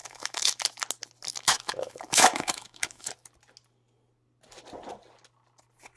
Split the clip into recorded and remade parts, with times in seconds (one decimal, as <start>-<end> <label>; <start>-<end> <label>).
0.0-0.6 remade; 0.6-1.3 recorded; 1.3-3.1 remade; 3.1-6.0 recorded